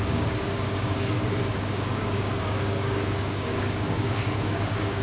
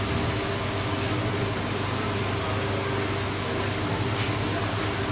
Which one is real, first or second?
second